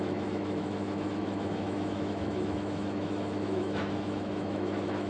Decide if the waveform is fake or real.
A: fake